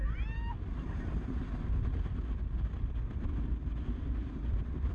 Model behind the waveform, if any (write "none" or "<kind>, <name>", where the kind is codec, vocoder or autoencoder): none